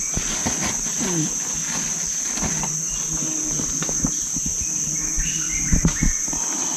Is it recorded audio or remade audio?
recorded